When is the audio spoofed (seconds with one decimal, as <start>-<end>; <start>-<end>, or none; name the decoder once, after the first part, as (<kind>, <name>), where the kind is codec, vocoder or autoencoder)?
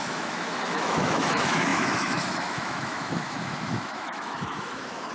0.0-5.1 (autoencoder, DAC-VAE)